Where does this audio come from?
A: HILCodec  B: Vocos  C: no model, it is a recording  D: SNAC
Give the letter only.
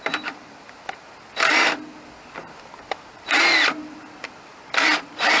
C